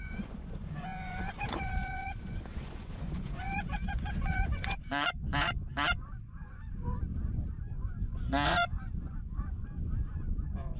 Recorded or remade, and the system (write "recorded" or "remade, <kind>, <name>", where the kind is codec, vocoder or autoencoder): remade, vocoder, Vocos